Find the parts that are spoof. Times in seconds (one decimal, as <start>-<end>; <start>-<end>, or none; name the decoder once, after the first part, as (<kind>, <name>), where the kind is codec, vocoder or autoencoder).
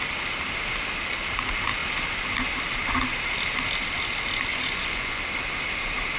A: 4.5-5.2 (vocoder, Vocos)